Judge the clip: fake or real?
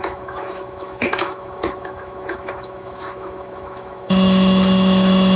fake